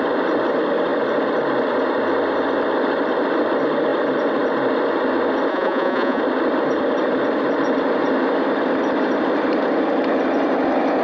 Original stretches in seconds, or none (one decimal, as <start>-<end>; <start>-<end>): 0.0-5.5; 6.2-11.0